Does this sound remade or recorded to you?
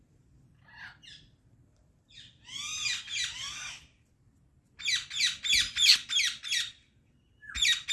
recorded